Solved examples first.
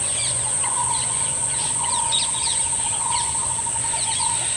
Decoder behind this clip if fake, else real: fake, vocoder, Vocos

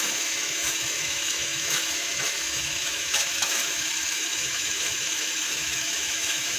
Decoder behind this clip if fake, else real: fake, autoencoder, DAC-VAE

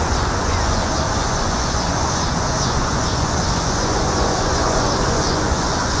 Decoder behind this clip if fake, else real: fake, vocoder, Vocos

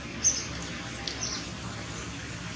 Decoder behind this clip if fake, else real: real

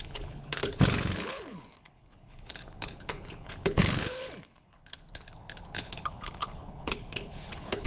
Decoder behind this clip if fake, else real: fake, codec, HILCodec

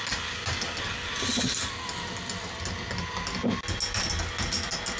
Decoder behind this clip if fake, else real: real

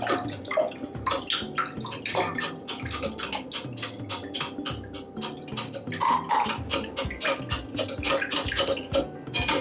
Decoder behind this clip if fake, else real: real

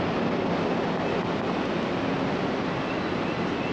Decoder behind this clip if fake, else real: real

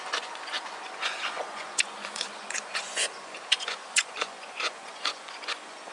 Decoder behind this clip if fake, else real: fake, vocoder, Vocos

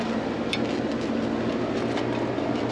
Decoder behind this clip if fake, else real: real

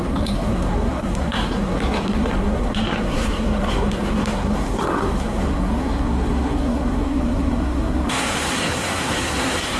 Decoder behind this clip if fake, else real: fake, codec, SNAC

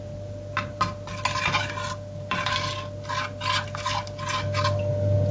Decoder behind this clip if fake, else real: real